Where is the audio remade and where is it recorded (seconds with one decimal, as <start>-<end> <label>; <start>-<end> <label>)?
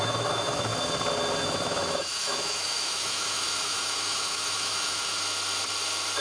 0.0-0.7 remade; 0.7-1.4 recorded; 1.4-5.2 remade; 5.2-6.2 recorded